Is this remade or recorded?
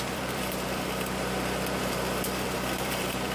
remade